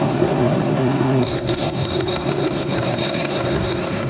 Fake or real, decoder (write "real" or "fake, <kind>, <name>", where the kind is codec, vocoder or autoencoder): fake, codec, SNAC